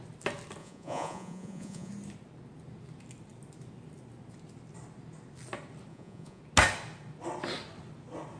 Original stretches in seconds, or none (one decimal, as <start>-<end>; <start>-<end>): 0.0-0.6; 1.9-5.9; 6.4-8.4